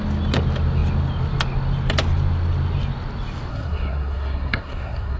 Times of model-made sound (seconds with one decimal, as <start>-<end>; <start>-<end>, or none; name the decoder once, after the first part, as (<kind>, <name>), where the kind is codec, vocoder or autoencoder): 3.5-5.2 (codec, SNAC)